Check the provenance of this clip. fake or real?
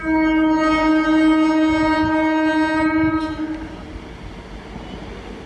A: real